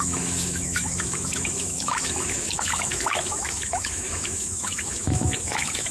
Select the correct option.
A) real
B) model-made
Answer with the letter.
B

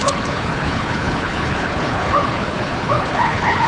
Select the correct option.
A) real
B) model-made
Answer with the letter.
B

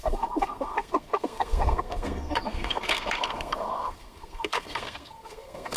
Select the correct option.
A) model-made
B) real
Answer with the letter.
A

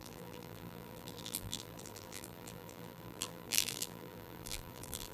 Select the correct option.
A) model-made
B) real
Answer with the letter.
A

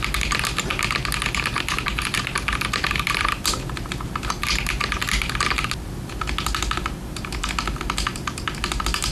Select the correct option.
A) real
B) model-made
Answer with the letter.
A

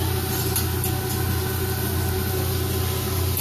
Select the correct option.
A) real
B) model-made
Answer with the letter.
A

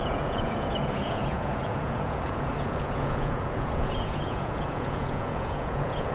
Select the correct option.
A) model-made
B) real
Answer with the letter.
A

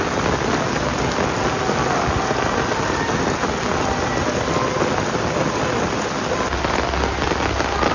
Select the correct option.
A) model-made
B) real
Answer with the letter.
B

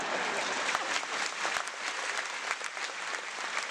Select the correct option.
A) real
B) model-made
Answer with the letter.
A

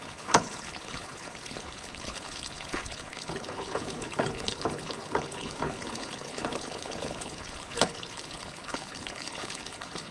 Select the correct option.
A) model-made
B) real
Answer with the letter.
A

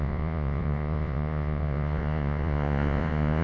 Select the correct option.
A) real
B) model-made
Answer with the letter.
B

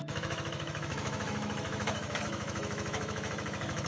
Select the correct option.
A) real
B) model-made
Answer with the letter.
B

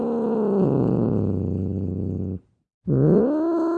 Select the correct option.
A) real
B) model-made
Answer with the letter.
A